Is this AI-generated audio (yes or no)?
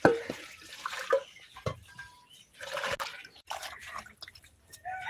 yes